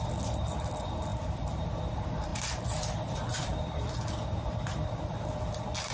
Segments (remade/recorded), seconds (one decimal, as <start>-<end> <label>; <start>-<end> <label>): 0.0-2.3 recorded; 2.3-5.9 remade